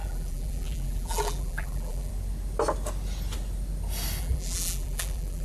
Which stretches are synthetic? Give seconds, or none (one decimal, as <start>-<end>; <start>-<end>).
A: 0.0-2.1; 4.2-5.4